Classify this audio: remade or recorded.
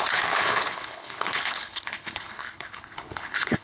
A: remade